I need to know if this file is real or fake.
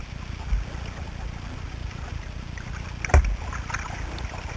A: real